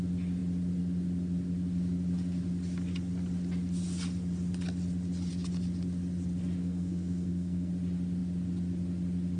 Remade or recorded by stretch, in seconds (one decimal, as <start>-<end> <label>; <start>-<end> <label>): 0.0-6.6 recorded; 6.6-7.7 remade; 7.7-9.4 recorded